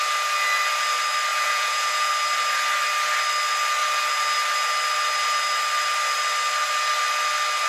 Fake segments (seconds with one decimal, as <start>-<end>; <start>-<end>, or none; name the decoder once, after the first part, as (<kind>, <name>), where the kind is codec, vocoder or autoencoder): 1.3-2.1 (vocoder, Vocos)